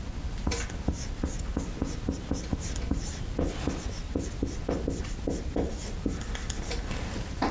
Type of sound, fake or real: real